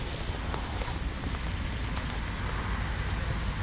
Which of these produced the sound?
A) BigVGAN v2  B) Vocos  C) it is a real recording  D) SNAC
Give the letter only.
C